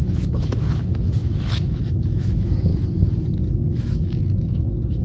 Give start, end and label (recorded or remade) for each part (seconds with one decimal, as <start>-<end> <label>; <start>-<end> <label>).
0.0-2.7 remade; 2.7-3.5 recorded; 3.5-5.0 remade